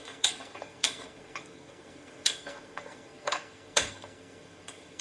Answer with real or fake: fake